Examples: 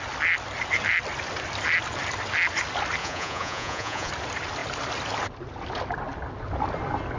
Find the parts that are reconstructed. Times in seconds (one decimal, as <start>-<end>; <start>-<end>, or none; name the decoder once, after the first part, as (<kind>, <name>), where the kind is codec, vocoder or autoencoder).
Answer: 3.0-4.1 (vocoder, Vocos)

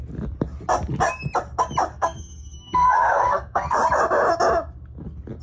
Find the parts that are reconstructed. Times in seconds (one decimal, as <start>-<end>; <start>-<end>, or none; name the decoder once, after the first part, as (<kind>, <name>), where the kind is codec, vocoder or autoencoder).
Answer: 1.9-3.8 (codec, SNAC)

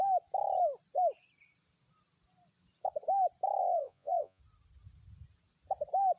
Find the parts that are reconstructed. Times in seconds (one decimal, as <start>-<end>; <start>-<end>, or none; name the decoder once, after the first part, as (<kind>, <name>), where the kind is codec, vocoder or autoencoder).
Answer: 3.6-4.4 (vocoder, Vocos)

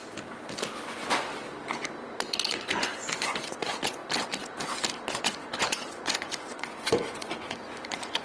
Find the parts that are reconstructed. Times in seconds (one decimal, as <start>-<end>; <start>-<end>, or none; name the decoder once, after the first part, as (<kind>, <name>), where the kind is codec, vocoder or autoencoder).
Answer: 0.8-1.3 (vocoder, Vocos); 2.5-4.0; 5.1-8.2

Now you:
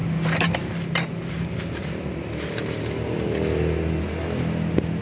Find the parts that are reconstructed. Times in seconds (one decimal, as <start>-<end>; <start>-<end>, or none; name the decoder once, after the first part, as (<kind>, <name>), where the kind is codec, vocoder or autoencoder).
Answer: none

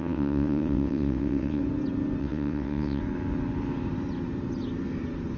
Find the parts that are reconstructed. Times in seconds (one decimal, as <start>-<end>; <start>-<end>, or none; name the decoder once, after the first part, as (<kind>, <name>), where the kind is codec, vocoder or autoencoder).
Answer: 0.0-1.6 (vocoder, WaveNeXt); 2.2-3.0